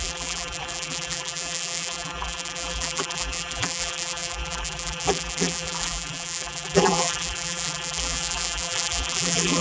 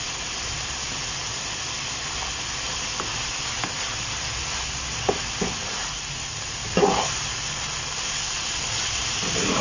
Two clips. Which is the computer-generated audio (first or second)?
first